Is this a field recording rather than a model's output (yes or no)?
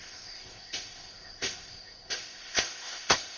no